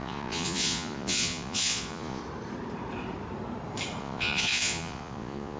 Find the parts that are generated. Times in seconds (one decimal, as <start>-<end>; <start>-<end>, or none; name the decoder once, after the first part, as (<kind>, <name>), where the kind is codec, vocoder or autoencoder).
0.0-2.2 (vocoder, Vocos); 4.0-5.6